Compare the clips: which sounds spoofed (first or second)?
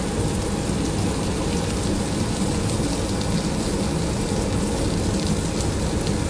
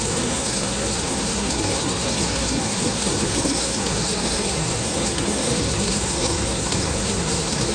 second